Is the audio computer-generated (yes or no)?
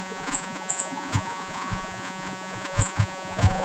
yes